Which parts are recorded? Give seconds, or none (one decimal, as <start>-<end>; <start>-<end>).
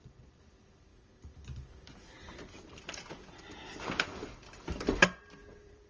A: 0.9-2.5